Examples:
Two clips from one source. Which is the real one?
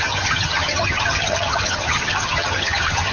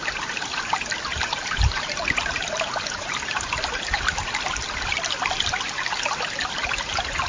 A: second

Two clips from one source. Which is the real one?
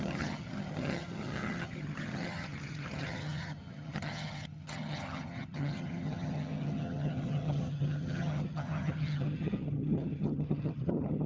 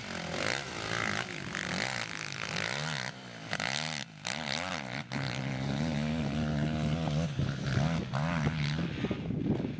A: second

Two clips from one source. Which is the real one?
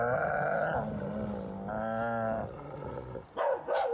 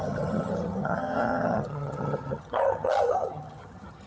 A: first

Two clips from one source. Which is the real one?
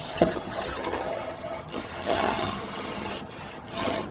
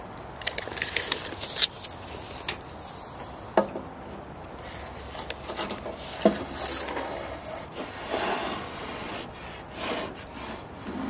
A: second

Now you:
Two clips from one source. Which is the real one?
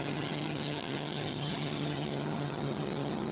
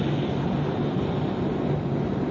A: second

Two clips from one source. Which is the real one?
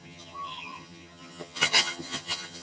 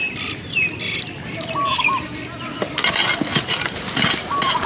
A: second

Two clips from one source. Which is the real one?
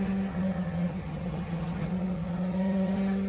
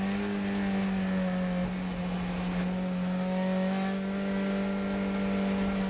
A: second